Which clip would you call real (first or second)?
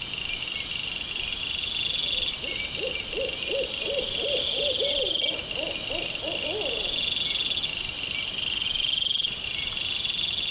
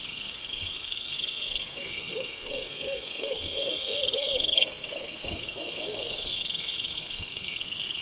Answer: first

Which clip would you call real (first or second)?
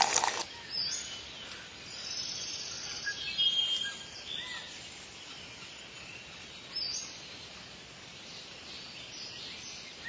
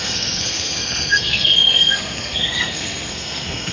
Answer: first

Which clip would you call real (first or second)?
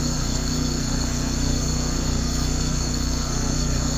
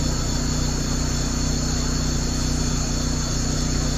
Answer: second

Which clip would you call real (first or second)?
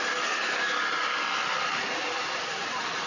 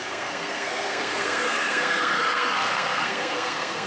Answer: first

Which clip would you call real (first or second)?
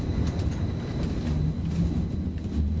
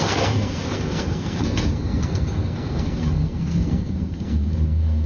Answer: first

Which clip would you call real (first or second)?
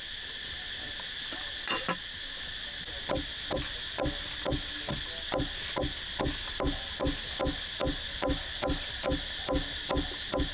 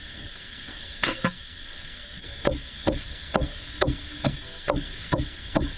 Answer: first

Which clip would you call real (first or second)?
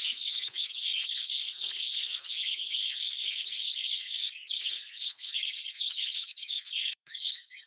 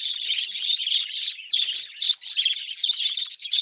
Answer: second